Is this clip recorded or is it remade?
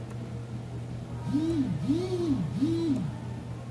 recorded